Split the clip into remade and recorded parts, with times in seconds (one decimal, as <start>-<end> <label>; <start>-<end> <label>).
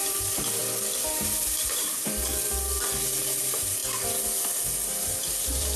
0.0-0.6 remade; 0.6-1.1 recorded; 1.1-2.3 remade; 2.3-3.4 recorded; 3.4-3.8 remade; 3.8-5.0 recorded; 5.0-5.8 remade